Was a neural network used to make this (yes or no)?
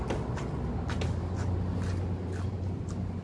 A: no